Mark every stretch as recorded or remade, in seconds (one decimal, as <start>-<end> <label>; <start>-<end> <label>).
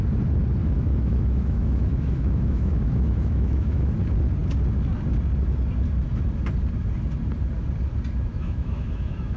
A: 0.0-0.6 recorded; 0.6-3.9 remade; 3.9-8.3 recorded; 8.3-9.4 remade